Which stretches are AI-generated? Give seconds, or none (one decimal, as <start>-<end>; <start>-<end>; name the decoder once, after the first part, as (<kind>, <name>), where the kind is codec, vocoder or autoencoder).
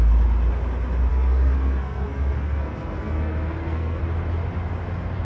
1.1-4.0 (codec, SNAC)